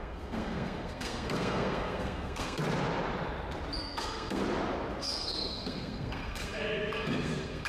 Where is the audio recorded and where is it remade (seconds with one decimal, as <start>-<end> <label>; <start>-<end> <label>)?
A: 0.0-2.6 remade; 2.6-3.8 recorded; 3.8-4.4 remade; 4.4-5.0 recorded; 5.0-7.7 remade